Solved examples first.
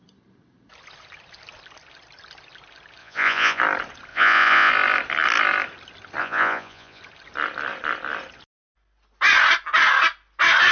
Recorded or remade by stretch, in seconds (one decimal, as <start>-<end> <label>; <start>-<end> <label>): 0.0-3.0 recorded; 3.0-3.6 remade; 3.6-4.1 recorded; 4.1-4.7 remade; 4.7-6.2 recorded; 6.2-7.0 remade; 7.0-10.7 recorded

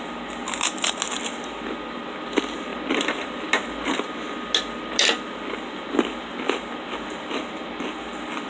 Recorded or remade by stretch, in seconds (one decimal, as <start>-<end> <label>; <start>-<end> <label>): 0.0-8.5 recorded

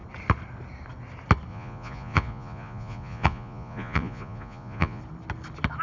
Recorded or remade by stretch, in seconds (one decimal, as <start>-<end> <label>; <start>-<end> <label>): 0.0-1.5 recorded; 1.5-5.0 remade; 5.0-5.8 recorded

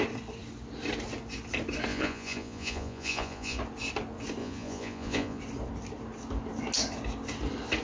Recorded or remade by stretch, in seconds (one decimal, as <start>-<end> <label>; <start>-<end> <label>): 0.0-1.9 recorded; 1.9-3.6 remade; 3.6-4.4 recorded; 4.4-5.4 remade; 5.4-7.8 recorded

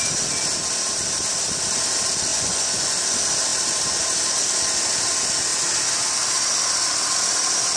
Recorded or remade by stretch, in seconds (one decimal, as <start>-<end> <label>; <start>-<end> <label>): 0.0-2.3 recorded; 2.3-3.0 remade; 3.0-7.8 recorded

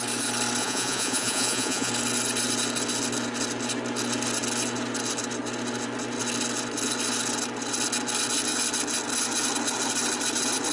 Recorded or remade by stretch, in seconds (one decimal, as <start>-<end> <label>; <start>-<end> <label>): 0.0-0.6 recorded; 0.6-1.9 remade; 1.9-10.7 recorded

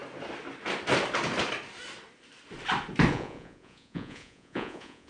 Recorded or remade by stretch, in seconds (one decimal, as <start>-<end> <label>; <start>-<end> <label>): 0.0-3.1 recorded; 3.1-5.1 remade